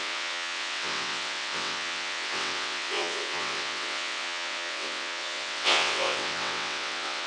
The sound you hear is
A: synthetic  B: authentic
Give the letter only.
A